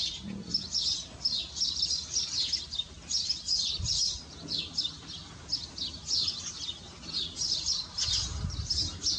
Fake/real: real